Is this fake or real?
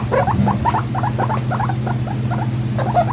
real